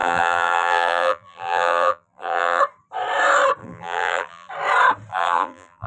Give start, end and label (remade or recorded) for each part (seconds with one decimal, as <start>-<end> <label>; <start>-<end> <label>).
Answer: 0.0-2.6 remade; 2.6-3.6 recorded; 3.6-4.5 remade; 4.5-5.1 recorded; 5.1-5.9 remade